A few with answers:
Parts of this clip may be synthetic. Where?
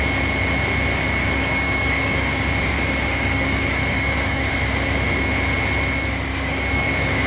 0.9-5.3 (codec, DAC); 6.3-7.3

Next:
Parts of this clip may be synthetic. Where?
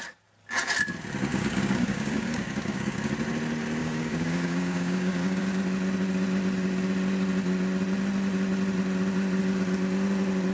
1.3-3.1 (codec, DAC); 3.8-5.4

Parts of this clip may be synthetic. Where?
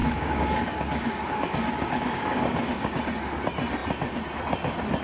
0.0-3.0 (codec, DAC)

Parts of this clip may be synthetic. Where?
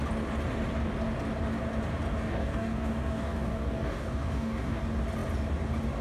2.1-4.8 (codec, DAC)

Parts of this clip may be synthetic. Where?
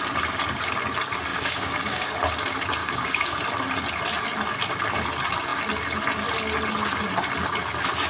1.3-2.1 (codec, DAC); 2.8-3.4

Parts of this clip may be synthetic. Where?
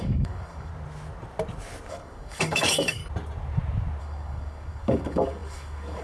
0.0-0.7 (codec, DAC); 1.9-3.0; 4.0-6.0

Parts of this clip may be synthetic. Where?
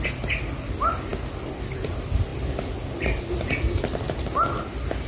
none